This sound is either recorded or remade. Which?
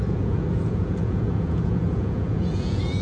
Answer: remade